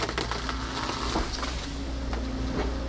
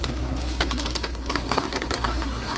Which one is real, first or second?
first